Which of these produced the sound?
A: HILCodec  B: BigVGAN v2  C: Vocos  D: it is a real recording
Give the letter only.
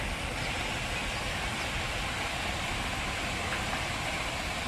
D